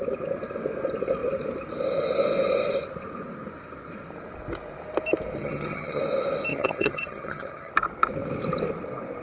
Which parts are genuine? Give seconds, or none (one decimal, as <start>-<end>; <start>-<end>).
0.0-5.4; 6.0-6.5; 7.7-9.2